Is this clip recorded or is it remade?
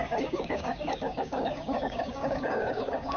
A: remade